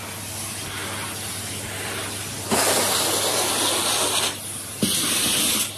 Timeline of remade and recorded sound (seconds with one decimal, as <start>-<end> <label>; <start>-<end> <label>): 0.0-5.8 recorded